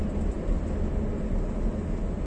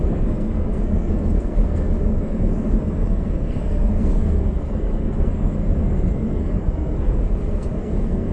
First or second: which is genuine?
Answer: first